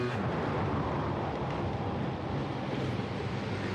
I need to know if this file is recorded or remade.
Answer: recorded